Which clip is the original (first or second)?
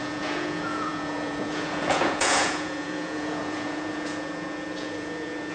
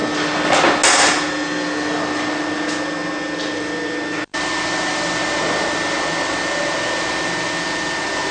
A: second